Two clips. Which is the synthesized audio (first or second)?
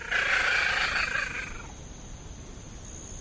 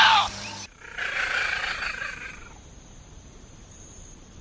second